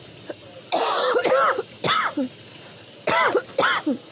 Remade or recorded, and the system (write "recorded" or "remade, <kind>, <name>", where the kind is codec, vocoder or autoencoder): recorded